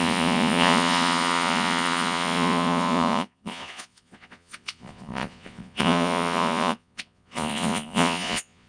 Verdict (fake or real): fake